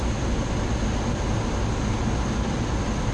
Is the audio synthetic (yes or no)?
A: no